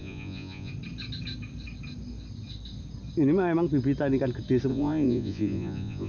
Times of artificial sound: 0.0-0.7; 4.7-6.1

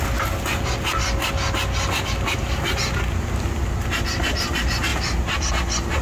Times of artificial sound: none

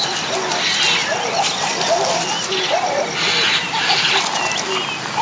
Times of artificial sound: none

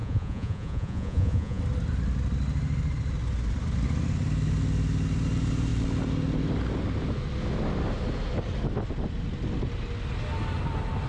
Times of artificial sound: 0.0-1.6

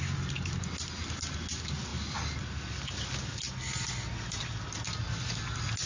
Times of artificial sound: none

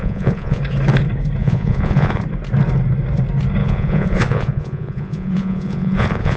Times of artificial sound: 0.0-0.6; 1.4-2.2; 3.6-6.4

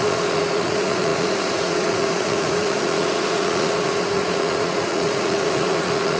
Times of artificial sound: 0.0-6.2